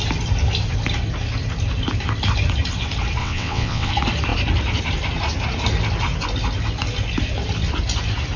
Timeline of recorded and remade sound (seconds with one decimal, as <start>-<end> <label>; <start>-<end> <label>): 0.0-3.2 recorded; 3.2-3.9 remade; 3.9-8.4 recorded